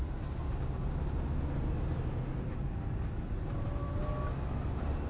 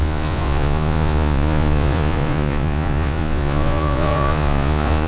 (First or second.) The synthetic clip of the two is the second